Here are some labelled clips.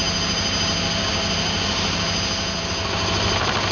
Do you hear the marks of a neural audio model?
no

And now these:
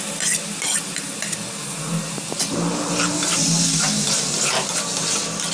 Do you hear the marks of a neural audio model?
no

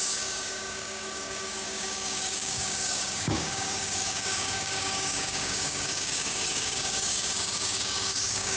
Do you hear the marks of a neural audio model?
yes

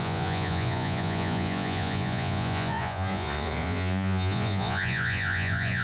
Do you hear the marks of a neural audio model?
yes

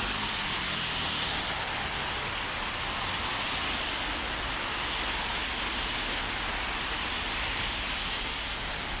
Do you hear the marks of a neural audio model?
no